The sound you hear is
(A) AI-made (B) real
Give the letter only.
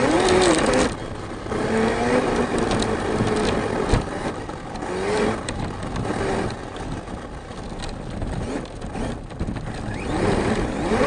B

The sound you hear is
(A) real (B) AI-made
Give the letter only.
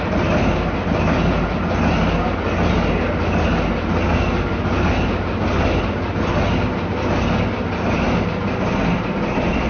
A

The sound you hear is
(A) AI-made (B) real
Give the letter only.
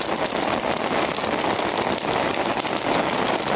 B